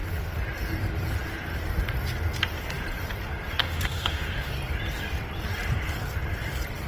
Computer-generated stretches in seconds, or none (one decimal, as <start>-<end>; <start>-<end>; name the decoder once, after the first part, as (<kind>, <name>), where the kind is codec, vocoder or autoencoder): 3.6-4.5 (autoencoder, DAC-VAE)